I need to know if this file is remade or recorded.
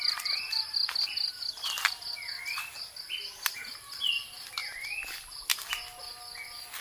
recorded